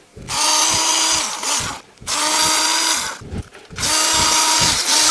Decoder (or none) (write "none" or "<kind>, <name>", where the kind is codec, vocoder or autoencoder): none